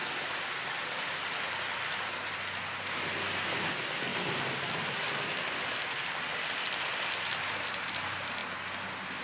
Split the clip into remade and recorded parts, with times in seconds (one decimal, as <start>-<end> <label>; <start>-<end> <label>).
0.0-9.2 recorded